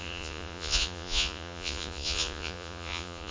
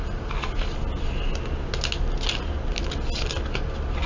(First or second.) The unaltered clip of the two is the second